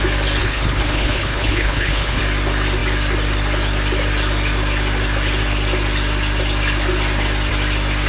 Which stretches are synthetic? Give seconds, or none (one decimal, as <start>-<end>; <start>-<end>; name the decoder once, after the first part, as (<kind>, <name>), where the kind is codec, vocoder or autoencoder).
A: 0.4-2.2 (codec, HILCodec)